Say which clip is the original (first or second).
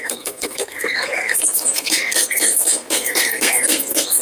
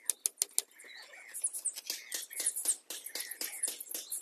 second